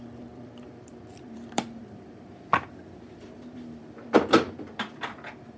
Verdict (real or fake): fake